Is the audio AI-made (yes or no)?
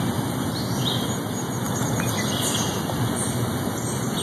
no